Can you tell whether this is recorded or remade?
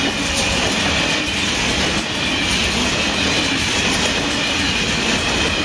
recorded